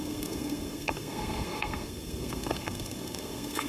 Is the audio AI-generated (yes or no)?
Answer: yes